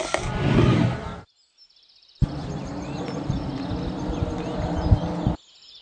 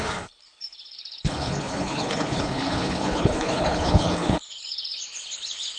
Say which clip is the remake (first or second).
second